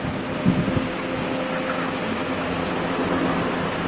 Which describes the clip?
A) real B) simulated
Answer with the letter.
A